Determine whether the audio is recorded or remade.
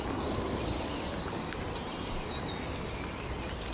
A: recorded